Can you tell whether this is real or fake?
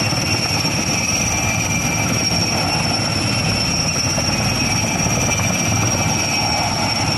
real